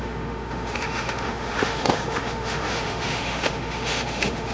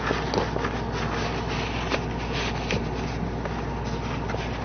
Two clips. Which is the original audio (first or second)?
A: second